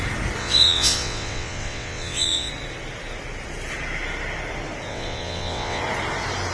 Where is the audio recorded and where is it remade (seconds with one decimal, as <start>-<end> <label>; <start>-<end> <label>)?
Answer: 0.0-0.4 recorded; 0.4-2.5 remade; 2.5-4.9 recorded; 4.9-5.8 remade; 5.8-6.5 recorded